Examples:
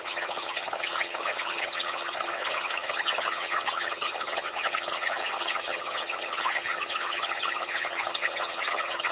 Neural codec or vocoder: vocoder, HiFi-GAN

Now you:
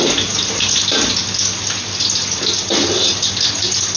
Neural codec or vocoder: none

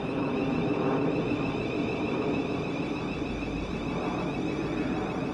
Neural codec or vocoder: none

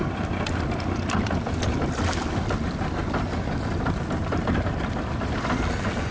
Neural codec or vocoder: none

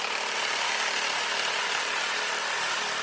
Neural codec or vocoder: none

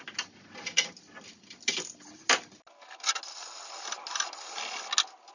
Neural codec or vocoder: none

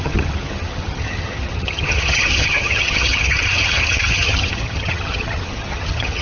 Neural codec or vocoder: vocoder, HiFi-GAN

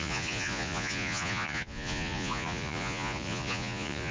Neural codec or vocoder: vocoder, Vocos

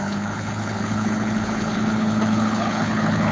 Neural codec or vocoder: codec, HILCodec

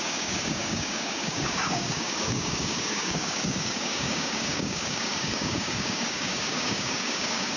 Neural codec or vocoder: codec, DAC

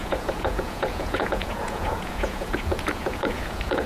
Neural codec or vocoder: vocoder, Vocos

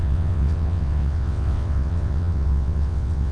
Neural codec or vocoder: vocoder, WaveNeXt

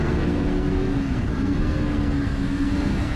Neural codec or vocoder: codec, SNAC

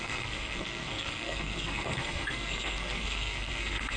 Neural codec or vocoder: codec, SNAC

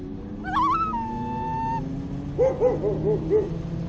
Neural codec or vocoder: none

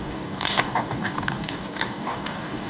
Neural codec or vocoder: codec, DAC